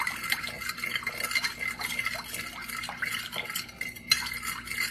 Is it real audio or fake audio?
real